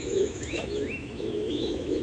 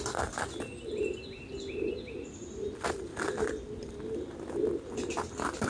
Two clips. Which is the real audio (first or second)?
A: second